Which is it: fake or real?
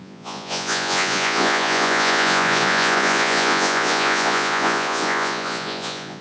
fake